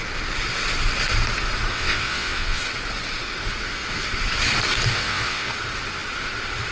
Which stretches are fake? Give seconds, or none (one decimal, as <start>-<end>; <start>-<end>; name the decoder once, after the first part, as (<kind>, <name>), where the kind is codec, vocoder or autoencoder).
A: 1.7-2.6 (vocoder, WaveNeXt); 4.9-5.5